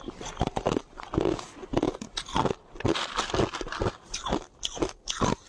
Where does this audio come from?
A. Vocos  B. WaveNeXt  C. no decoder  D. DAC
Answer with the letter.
C